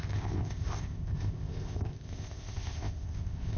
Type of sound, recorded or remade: remade